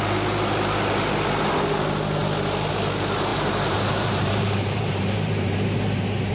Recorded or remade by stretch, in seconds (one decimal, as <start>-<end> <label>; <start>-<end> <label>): 0.0-3.3 recorded; 3.3-6.3 remade